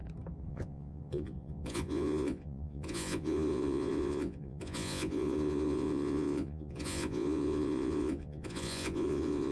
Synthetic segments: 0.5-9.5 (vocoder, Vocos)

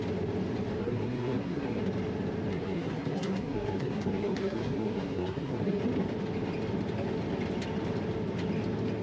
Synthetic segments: 0.8-1.8 (codec, SNAC); 2.5-5.8

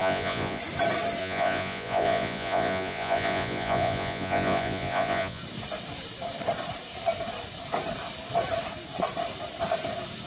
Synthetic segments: 0.0-0.6 (vocoder, Vocos); 1.2-5.4

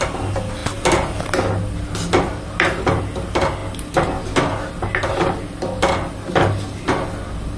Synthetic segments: none

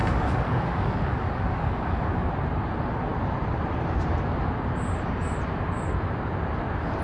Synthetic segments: 0.0-2.3 (codec, DAC)

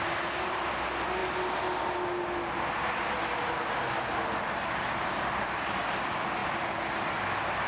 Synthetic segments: none